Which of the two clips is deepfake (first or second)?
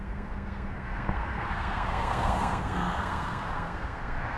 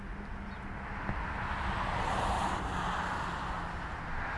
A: first